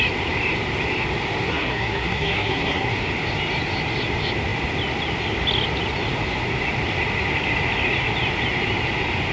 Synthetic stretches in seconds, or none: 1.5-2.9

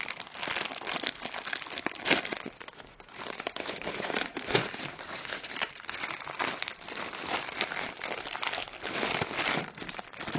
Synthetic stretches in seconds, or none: 2.3-5.5

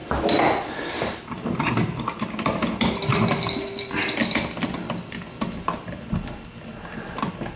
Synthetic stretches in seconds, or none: none

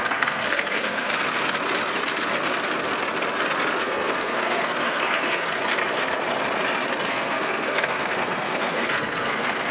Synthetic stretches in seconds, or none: 0.0-1.1; 3.8-5.8; 7.1-9.7

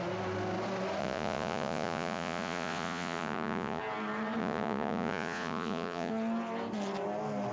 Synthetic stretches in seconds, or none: 1.0-3.8; 4.4-6.1

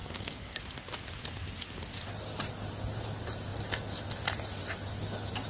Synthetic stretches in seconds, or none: 0.0-0.6

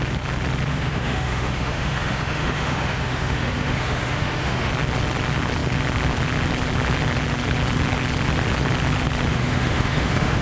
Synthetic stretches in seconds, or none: 0.7-4.7; 9.3-10.4